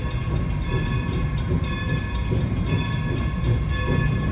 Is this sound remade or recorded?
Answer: recorded